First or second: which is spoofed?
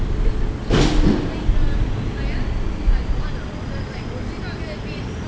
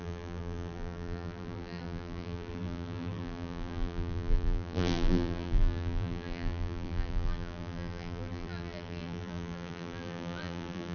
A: second